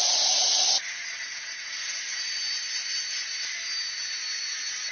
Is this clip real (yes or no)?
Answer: yes